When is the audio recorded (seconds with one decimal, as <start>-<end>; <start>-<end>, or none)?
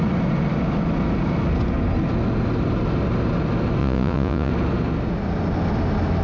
0.0-3.8; 4.5-6.2